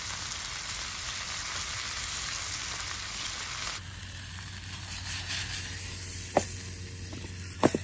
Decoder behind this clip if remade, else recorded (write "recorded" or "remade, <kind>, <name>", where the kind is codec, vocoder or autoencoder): recorded